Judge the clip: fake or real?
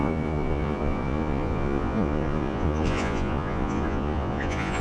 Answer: fake